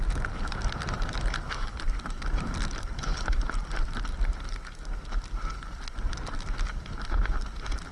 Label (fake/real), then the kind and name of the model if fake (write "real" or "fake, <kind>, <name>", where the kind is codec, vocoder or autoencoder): real